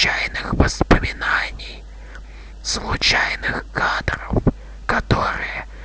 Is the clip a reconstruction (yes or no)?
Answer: no